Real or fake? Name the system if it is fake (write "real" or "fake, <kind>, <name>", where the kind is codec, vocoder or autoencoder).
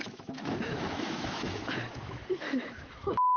fake, autoencoder, DAC-VAE